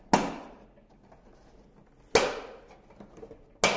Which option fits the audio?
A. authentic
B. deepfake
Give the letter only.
A